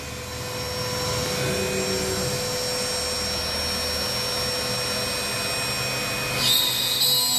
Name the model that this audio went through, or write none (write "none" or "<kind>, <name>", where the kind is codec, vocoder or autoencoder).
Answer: none